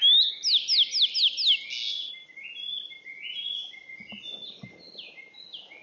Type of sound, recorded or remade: recorded